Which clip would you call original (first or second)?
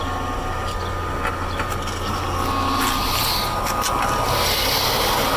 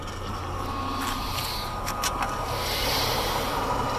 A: first